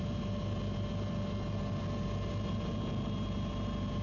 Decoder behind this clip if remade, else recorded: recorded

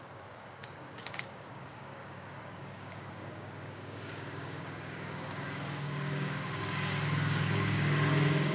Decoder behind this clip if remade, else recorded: remade, codec, DAC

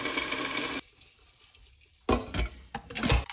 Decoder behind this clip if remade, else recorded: recorded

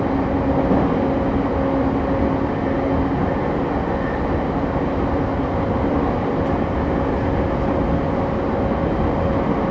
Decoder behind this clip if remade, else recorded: recorded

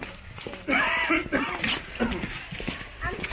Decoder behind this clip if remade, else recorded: recorded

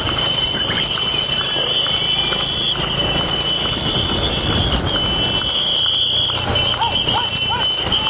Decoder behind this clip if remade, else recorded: recorded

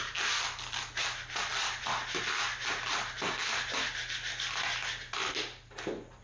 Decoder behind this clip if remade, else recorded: recorded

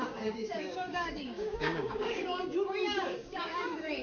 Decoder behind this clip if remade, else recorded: remade, codec, DAC